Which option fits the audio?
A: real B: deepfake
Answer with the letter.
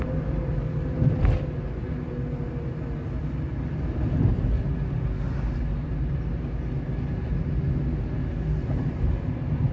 A